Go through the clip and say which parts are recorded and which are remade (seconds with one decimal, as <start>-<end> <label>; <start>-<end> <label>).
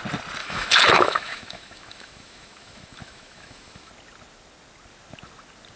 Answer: 0.0-0.4 recorded; 0.4-3.9 remade; 3.9-5.8 recorded